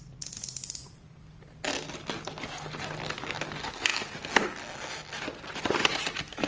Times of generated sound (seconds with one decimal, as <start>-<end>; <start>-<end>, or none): none